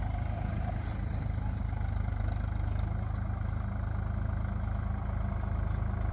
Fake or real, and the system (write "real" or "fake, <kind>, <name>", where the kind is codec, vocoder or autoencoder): real